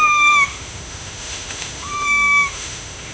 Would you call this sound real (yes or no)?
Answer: no